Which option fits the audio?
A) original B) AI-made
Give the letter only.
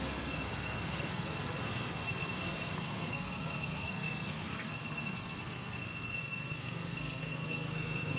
B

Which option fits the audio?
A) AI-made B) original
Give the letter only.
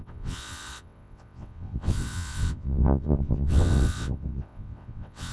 A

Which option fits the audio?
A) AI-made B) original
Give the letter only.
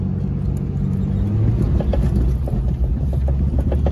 B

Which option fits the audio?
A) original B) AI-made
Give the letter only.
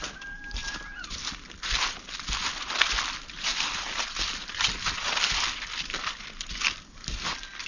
A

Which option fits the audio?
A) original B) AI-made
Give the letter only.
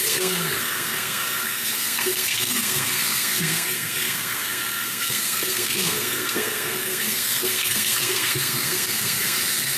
B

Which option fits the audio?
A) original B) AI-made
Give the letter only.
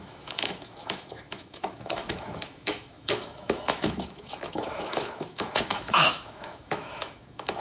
B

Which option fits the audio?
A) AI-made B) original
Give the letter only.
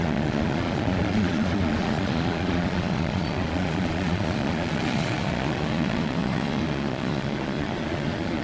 A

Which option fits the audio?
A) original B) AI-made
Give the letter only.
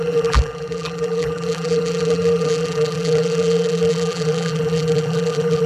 B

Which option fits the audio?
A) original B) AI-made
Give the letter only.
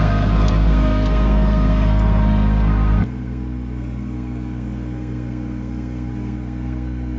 B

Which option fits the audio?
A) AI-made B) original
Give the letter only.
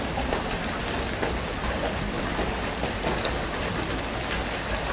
B